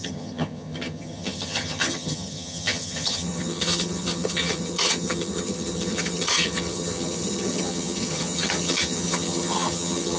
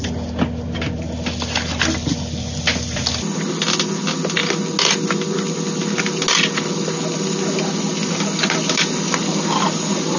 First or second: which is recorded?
second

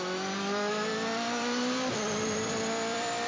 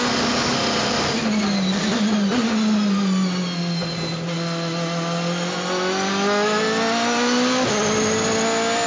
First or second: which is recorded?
second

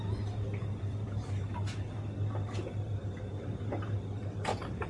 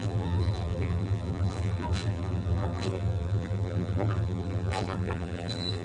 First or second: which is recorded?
first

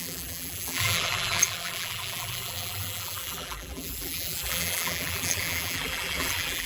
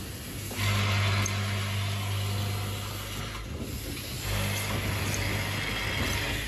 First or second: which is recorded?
second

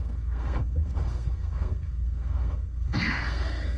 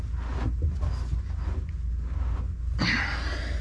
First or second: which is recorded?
second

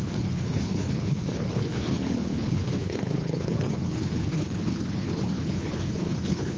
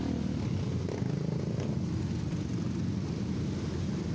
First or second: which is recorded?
second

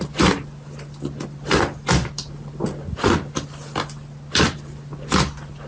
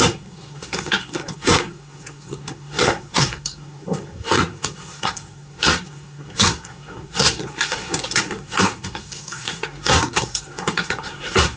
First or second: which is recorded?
first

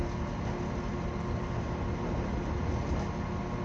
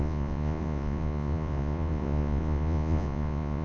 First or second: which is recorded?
first